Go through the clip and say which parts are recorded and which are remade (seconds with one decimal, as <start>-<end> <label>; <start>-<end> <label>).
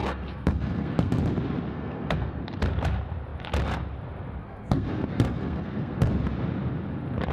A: 0.0-1.2 remade; 1.2-1.7 recorded; 1.7-2.4 remade; 2.4-4.4 recorded; 4.4-6.1 remade; 6.1-7.3 recorded